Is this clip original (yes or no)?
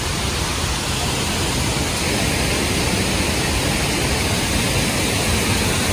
yes